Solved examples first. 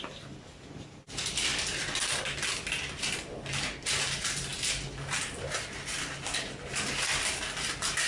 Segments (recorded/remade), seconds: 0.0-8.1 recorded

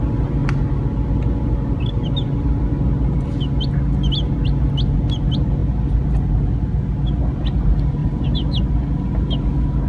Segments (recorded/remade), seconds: 0.0-8.0 recorded; 8.0-8.6 remade; 8.6-9.9 recorded

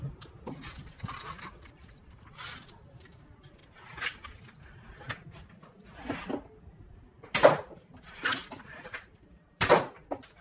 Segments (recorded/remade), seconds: 0.0-3.6 remade; 3.6-8.5 recorded; 8.5-10.4 remade

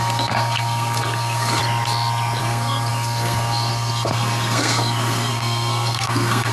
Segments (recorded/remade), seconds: 0.0-1.6 remade; 1.6-2.4 recorded; 2.4-6.5 remade

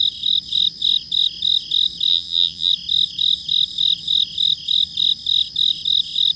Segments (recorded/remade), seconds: 0.0-2.1 recorded; 2.1-2.7 remade; 2.7-6.4 recorded

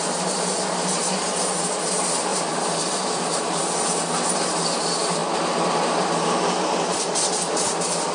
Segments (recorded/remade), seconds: 0.0-2.3 recorded; 2.3-3.6 remade; 3.6-8.1 recorded

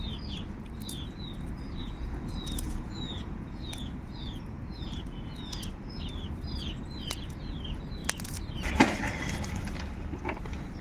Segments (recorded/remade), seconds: 0.0-1.8 recorded; 1.8-6.0 remade; 6.0-10.8 recorded